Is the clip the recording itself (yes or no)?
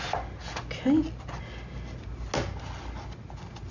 yes